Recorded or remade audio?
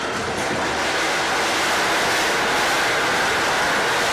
recorded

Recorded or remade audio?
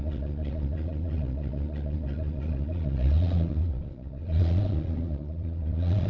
remade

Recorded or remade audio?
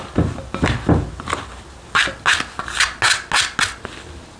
recorded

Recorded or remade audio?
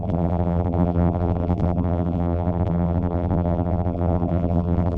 remade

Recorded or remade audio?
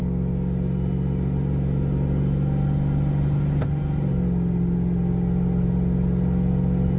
recorded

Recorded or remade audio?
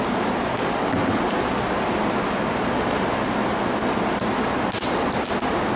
recorded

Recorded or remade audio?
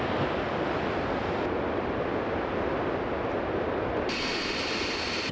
recorded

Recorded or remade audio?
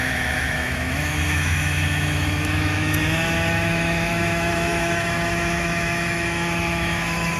remade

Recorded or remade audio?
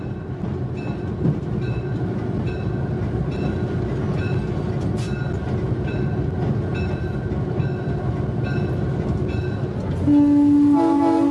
recorded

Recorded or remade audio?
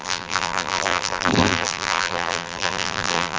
remade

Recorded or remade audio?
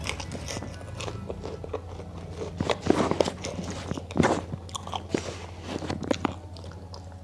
recorded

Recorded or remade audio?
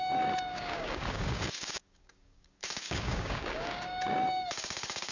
remade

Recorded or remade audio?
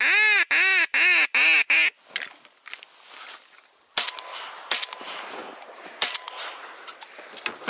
recorded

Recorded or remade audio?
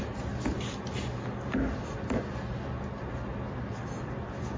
recorded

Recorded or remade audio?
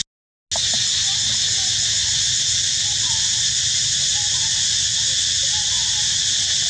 recorded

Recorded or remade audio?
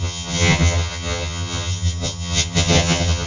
remade